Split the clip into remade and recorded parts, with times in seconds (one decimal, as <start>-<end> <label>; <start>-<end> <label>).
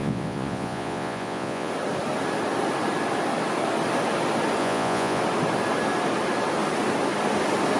0.0-1.7 remade; 1.7-4.6 recorded; 4.6-5.2 remade; 5.2-7.8 recorded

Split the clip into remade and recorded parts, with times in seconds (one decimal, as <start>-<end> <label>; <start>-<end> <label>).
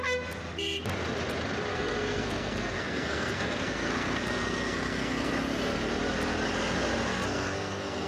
0.0-1.7 recorded; 1.7-5.3 remade; 5.3-7.1 recorded; 7.1-8.1 remade